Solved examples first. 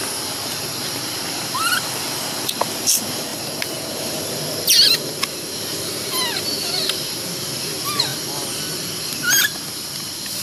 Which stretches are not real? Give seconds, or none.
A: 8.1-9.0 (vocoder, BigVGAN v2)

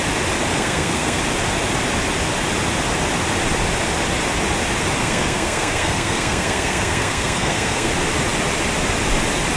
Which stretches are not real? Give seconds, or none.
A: 0.5-1.2 (codec, SNAC); 5.0-7.9

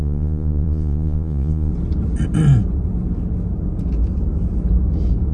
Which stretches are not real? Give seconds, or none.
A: 0.0-1.7 (vocoder, Vocos)

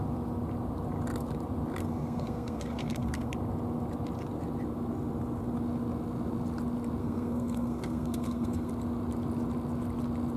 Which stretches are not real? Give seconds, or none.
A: 1.8-3.3 (codec, SNAC); 7.0-8.7

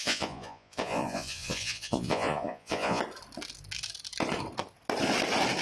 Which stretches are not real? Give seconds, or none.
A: 0.0-3.0 (vocoder, Vocos)

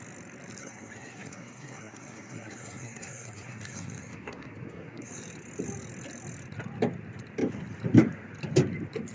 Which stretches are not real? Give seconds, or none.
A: 0.6-5.1 (codec, SNAC)

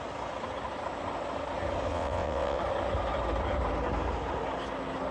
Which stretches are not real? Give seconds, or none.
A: 1.9-2.6 (vocoder, WaveNeXt)